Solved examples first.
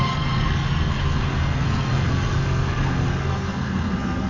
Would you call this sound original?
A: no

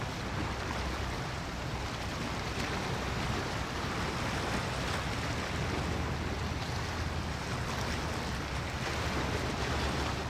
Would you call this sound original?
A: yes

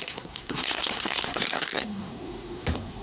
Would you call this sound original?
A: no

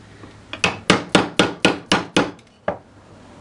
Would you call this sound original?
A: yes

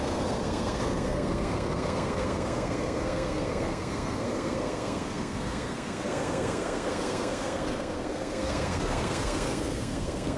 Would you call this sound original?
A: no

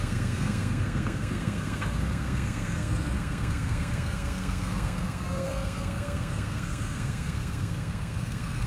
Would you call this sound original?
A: no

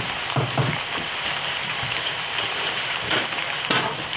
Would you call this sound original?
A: yes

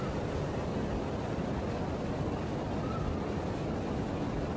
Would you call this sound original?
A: yes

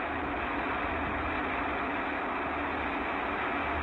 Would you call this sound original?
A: yes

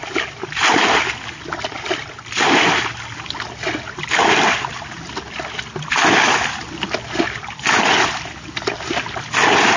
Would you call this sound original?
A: yes